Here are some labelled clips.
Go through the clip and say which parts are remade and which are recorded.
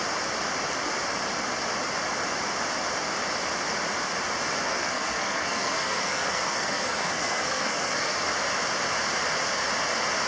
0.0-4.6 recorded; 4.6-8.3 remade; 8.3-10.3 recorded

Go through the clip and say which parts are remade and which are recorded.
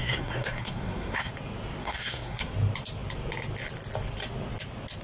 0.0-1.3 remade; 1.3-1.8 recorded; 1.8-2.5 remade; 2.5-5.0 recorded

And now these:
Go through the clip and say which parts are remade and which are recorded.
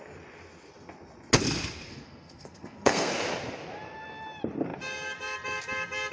0.0-1.9 recorded; 1.9-3.1 remade; 3.1-6.1 recorded